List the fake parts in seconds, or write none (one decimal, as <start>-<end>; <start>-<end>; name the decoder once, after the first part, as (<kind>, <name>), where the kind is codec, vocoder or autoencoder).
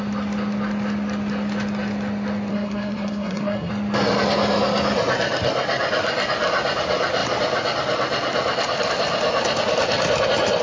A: 2.5-3.7 (codec, SNAC)